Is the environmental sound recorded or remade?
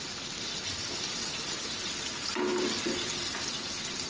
recorded